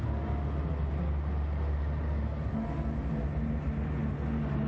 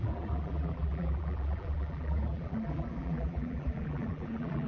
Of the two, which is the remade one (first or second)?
second